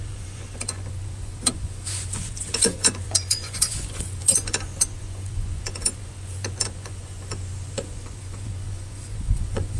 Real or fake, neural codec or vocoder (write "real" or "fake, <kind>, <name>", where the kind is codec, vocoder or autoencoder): fake, vocoder, Vocos